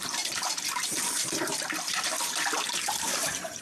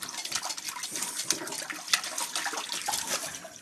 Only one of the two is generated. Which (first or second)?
first